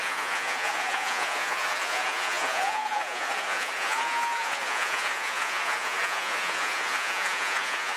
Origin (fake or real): fake